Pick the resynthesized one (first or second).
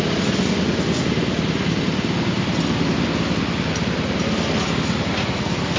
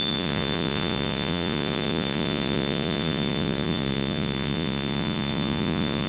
second